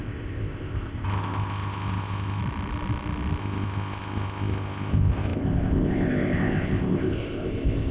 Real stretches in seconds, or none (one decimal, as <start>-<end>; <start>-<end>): 2.4-3.4